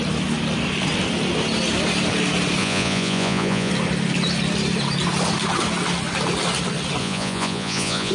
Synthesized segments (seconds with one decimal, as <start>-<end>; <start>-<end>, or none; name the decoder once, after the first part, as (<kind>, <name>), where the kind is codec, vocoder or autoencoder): 2.6-3.7 (vocoder, Vocos); 7.0-8.1